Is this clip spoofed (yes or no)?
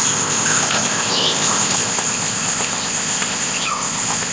yes